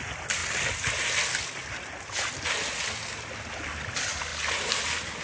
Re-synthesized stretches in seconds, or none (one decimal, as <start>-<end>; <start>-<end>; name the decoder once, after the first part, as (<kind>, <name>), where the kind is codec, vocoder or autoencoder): none

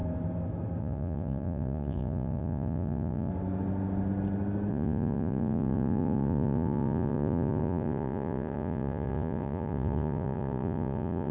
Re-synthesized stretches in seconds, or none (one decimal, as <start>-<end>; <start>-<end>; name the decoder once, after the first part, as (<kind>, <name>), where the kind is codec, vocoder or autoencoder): 0.8-3.3 (vocoder, Vocos); 4.7-11.3

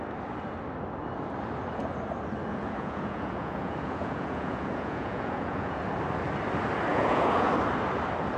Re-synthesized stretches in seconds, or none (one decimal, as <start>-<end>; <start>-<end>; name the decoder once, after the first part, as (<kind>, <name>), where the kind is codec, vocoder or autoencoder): 2.5-5.8 (vocoder, Vocos); 6.9-7.5

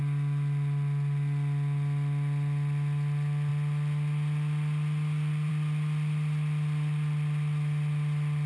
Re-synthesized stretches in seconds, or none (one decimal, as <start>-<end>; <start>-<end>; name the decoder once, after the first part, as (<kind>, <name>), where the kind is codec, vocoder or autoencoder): none

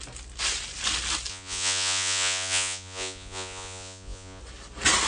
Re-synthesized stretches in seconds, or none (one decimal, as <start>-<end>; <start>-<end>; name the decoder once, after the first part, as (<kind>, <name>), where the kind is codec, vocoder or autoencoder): 1.3-4.4 (vocoder, Vocos)

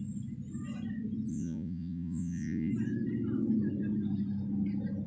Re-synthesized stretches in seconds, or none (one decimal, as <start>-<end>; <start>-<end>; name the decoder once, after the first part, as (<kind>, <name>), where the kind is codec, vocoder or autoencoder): 1.3-2.7 (vocoder, Vocos)